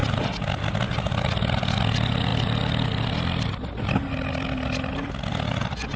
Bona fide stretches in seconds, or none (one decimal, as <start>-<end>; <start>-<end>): 0.0-6.0